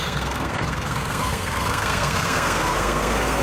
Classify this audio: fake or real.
fake